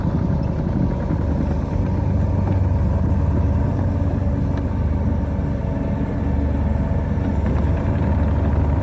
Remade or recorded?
recorded